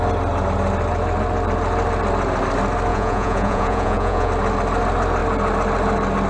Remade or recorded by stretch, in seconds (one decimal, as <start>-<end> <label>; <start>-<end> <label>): 0.0-2.9 recorded; 2.9-4.3 remade; 4.3-6.3 recorded